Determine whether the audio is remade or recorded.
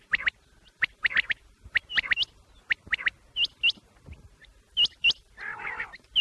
recorded